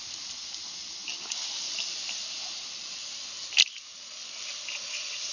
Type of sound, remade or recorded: recorded